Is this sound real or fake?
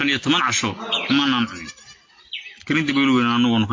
real